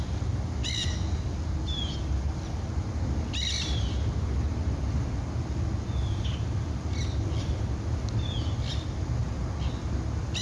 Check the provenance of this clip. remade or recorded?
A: recorded